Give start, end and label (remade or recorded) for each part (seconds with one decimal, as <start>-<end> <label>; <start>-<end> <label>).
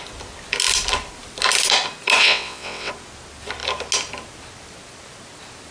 0.0-2.2 recorded; 2.2-2.9 remade; 2.9-5.7 recorded